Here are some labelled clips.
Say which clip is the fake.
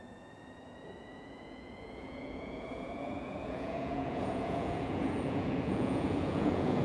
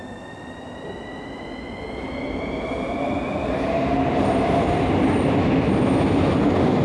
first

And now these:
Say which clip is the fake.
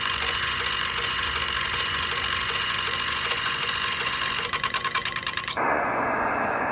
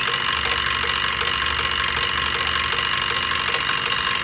first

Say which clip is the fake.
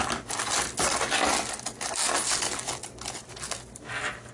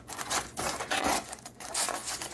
second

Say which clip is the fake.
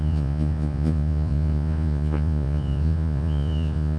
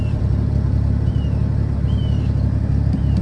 first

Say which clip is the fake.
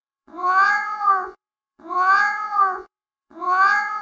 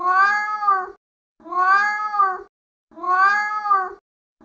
first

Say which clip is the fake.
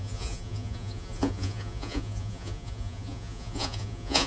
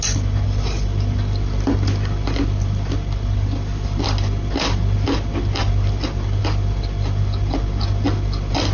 first